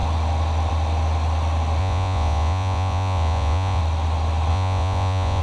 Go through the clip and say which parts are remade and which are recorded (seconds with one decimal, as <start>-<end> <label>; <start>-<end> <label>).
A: 0.0-1.8 recorded; 1.8-3.8 remade; 3.8-4.5 recorded; 4.5-5.4 remade